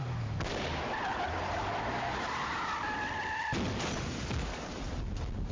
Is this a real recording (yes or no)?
yes